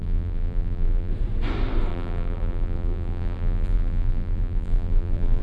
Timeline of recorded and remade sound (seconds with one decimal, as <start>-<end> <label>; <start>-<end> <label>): 0.0-1.1 remade; 1.1-1.9 recorded; 1.9-5.4 remade